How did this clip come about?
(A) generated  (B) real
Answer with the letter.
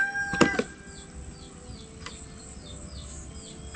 B